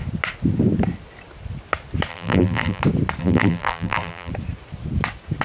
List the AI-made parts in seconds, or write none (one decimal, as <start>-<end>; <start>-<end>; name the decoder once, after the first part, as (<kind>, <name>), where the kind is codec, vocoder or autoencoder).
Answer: 2.1-2.8 (vocoder, BigVGAN v2); 3.2-4.3